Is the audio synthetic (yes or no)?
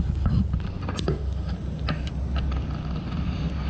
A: no